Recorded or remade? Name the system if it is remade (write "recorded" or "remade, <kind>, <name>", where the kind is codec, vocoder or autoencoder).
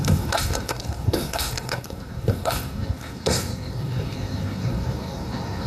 remade, codec, SNAC